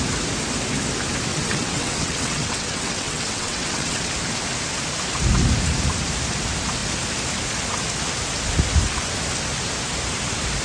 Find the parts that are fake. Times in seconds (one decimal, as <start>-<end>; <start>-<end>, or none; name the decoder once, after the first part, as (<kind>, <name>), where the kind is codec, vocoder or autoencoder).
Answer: 1.3-4.1 (vocoder, WaveNeXt)